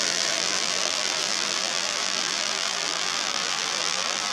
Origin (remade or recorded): remade